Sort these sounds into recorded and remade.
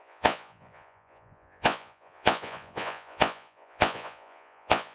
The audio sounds remade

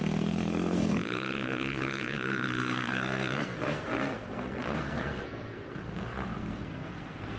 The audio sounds remade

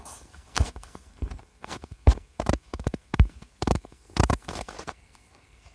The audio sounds remade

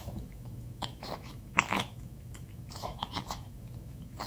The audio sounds remade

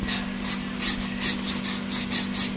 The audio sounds recorded